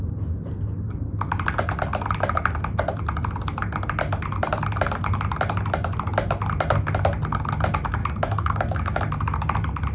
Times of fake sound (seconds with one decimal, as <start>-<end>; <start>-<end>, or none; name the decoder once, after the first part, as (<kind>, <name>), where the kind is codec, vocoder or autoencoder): 8.0-9.0 (codec, DAC)